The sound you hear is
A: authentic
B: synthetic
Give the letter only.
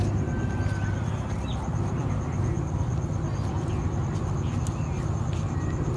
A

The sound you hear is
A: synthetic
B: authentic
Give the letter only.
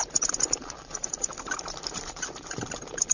A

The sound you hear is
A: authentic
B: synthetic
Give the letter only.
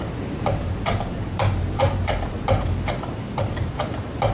B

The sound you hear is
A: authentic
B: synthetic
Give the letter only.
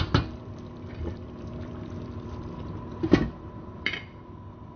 B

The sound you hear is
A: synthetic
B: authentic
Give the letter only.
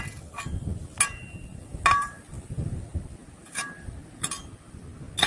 B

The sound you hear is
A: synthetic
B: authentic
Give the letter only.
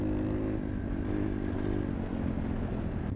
B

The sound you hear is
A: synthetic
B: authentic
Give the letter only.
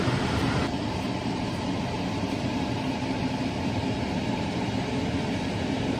A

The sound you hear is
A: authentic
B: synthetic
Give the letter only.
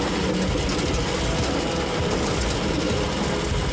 A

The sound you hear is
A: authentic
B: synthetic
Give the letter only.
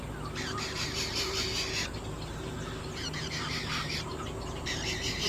B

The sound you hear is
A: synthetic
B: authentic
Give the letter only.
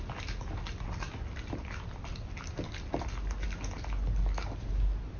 B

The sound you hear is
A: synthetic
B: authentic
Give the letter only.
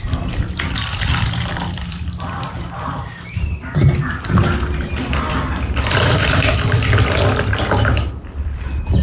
A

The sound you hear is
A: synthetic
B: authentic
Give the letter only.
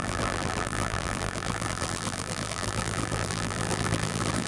A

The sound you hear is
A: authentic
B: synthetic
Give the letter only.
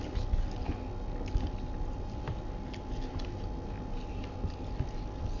A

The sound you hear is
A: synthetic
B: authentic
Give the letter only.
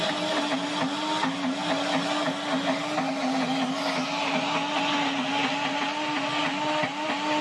B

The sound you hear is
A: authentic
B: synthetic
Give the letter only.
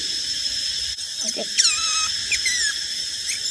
B